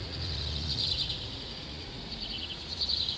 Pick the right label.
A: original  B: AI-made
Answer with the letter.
B